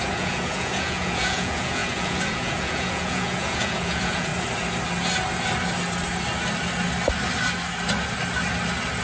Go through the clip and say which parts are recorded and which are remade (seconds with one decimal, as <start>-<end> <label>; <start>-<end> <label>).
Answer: 0.0-4.3 remade; 4.3-9.0 recorded